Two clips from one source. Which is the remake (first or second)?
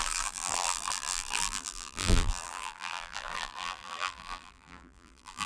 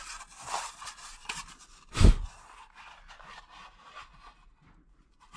first